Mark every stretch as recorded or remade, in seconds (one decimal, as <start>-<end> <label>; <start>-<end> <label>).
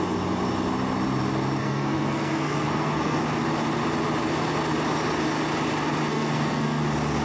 0.0-1.6 recorded; 1.6-3.2 remade; 3.2-6.1 recorded; 6.1-6.8 remade; 6.8-7.2 recorded